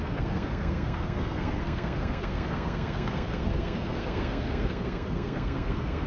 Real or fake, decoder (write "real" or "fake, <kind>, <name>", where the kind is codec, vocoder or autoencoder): fake, codec, SNAC